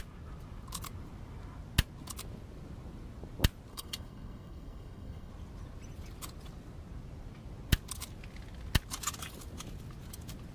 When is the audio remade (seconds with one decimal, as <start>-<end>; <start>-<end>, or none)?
3.7-5.3